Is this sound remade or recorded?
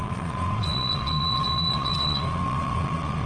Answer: remade